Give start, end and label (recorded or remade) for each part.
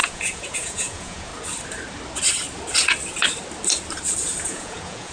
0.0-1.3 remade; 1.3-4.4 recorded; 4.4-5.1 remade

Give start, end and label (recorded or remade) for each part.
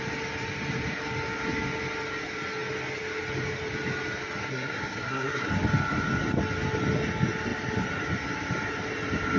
0.0-4.4 recorded; 4.4-5.5 remade; 5.5-9.4 recorded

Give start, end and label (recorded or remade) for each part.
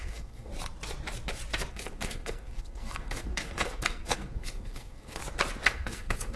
0.0-0.5 remade; 0.5-1.7 recorded; 1.7-5.2 remade; 5.2-5.7 recorded; 5.7-6.4 remade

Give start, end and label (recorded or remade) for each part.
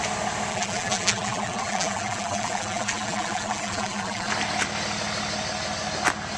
0.0-0.5 recorded; 0.5-4.3 remade; 4.3-6.4 recorded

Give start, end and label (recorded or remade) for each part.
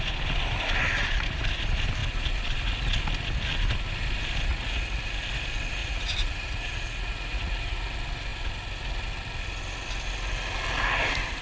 0.0-4.5 recorded; 4.5-5.1 remade; 5.1-5.8 recorded; 5.8-7.8 remade; 7.8-11.4 recorded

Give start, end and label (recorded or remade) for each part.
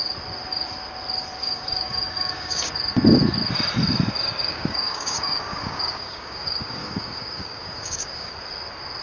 0.0-1.4 recorded; 1.4-2.7 remade; 2.7-4.4 recorded; 4.4-8.3 remade; 8.3-9.0 recorded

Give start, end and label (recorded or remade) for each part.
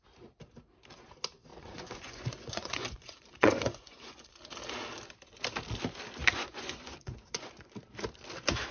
0.0-1.5 recorded; 1.5-4.3 remade; 4.3-6.2 recorded; 6.2-7.7 remade; 7.7-8.7 recorded